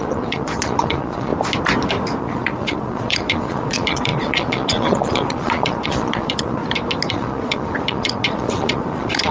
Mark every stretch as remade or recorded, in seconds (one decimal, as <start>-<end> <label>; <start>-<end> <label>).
0.0-1.3 remade; 1.3-2.2 recorded; 2.2-6.6 remade; 6.6-7.1 recorded; 7.1-9.3 remade